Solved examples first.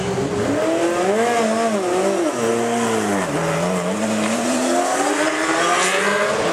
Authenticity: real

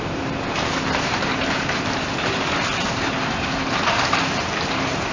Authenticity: fake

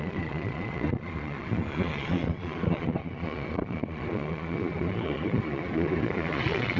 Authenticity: fake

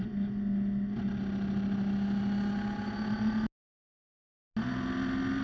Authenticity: real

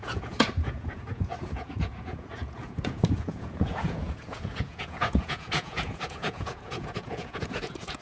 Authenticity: fake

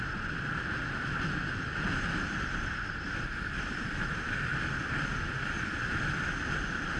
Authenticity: real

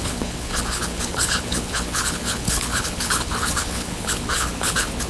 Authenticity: fake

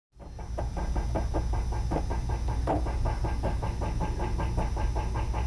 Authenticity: real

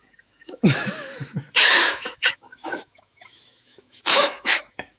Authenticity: fake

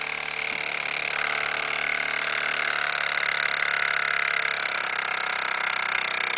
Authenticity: real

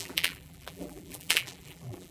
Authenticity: fake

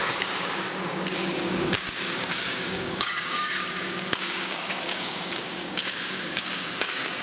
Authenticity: fake